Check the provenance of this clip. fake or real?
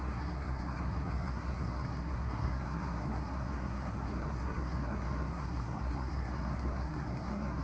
fake